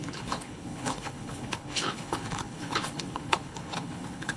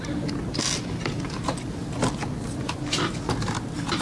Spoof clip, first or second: first